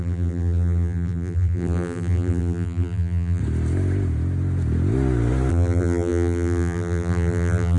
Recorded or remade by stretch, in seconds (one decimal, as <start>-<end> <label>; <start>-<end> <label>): 0.0-3.4 remade; 3.4-5.5 recorded; 5.5-7.8 remade